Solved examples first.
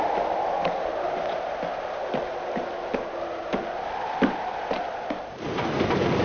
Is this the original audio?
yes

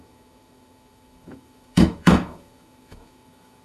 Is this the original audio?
no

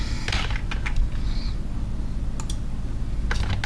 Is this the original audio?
yes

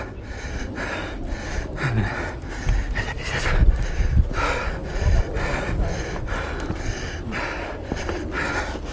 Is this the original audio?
yes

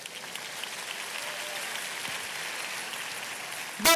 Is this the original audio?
yes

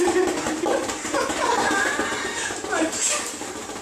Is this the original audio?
yes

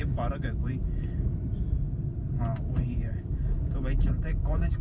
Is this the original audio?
no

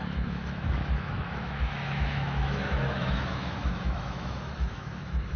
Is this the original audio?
no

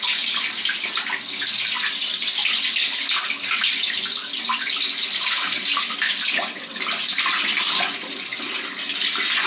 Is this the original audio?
yes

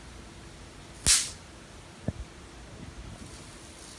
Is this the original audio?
yes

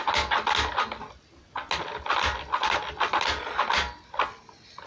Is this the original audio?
yes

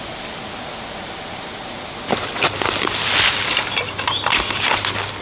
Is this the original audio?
yes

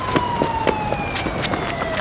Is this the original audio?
yes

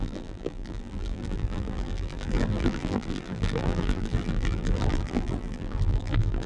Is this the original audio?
no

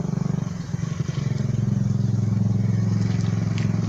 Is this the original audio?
yes